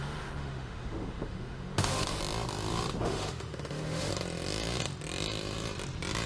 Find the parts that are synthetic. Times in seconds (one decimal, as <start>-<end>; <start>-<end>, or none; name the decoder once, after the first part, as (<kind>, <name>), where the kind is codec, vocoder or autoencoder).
0.0-2.2 (autoencoder, DAC-VAE); 3.0-4.1